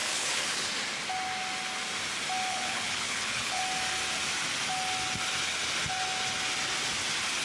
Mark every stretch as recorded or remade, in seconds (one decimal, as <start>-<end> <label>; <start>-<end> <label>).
0.0-0.7 remade; 0.7-2.5 recorded; 2.5-3.6 remade; 3.6-7.4 recorded